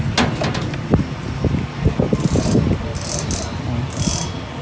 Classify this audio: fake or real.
real